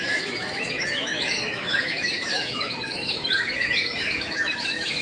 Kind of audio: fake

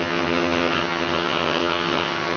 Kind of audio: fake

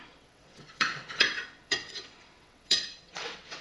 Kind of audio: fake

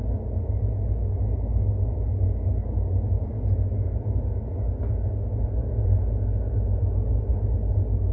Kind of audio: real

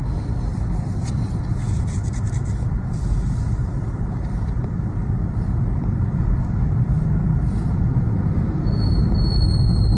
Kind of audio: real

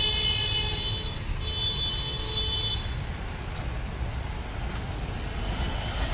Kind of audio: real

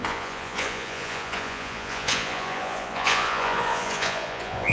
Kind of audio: fake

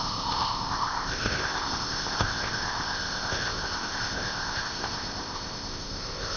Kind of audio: fake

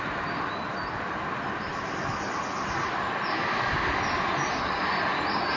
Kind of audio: real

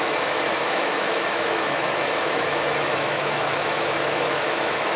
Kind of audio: fake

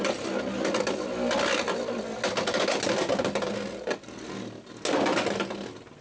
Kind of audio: real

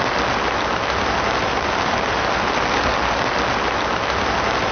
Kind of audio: real